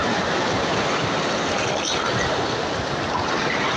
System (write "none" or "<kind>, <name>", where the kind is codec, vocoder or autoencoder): none